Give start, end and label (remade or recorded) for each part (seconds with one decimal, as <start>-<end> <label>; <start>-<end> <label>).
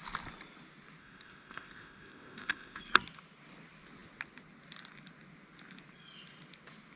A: 0.0-1.0 recorded; 1.0-2.8 remade; 2.8-7.0 recorded